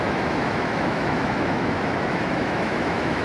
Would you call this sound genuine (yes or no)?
no